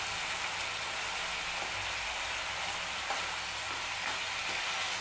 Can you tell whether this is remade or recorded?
recorded